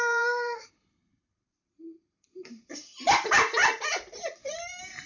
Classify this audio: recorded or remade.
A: remade